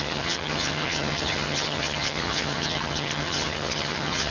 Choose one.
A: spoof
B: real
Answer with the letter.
A